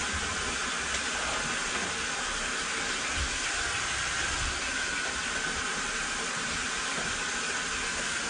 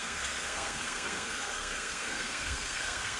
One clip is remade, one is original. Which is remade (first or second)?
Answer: second